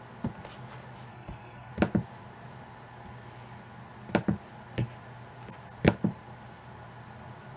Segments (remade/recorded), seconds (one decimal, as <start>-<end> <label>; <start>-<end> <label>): 0.0-1.1 recorded; 1.1-1.7 remade; 1.7-7.6 recorded